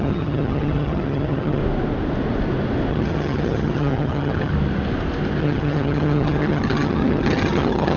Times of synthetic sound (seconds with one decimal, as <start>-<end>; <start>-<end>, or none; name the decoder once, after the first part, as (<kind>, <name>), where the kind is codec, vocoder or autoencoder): 0.0-1.6 (vocoder, HiFi-GAN); 2.9-4.5; 5.4-8.0

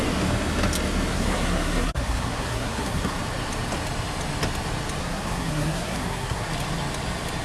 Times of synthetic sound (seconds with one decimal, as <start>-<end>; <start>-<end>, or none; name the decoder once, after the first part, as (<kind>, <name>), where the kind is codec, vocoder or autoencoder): 1.1-3.2 (codec, SNAC); 5.0-6.5

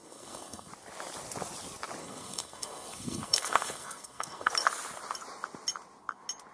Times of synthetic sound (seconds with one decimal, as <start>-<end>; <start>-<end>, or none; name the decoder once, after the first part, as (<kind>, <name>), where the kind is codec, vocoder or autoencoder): 0.0-0.7 (codec, SNAC); 2.0-4.5